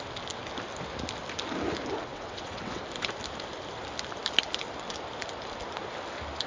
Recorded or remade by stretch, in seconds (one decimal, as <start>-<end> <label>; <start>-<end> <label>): 0.0-2.1 recorded; 2.1-2.8 remade; 2.8-6.5 recorded